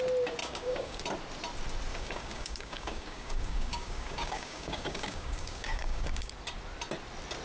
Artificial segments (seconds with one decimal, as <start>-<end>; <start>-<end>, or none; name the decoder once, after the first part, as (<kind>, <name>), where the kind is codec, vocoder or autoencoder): 0.4-1.0 (codec, DAC); 1.9-6.3